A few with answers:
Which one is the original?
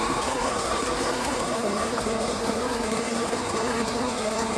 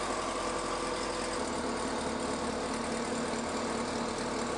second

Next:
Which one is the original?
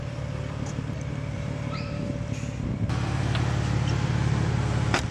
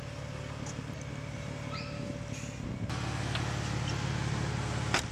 second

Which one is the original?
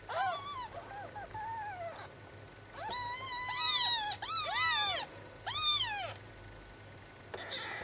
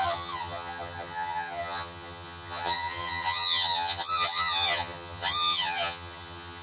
first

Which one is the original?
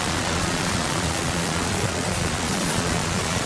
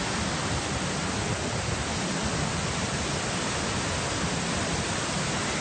second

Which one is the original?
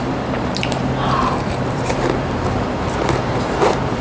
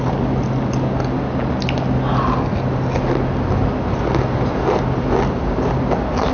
second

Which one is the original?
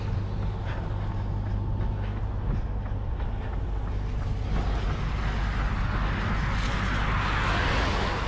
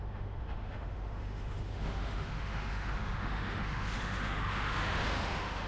first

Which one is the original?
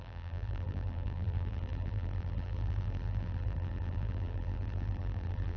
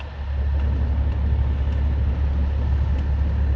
second